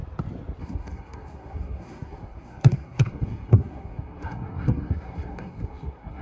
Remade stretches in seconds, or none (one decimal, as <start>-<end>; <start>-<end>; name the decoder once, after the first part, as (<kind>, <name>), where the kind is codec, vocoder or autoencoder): 0.6-6.2 (codec, SNAC)